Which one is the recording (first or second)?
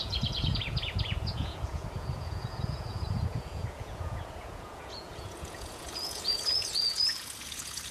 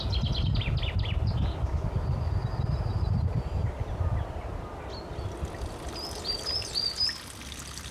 second